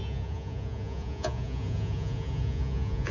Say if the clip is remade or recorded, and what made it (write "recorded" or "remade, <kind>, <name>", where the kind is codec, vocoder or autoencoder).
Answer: remade, vocoder, Vocos